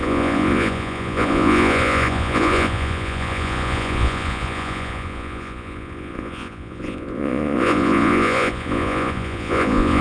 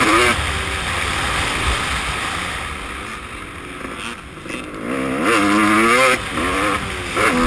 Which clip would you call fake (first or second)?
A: first